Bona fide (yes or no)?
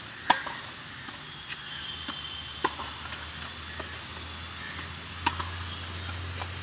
yes